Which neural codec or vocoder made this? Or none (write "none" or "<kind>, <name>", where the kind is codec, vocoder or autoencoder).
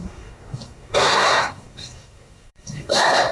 codec, SNAC